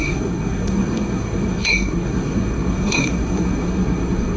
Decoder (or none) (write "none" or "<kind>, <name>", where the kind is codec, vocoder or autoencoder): codec, SNAC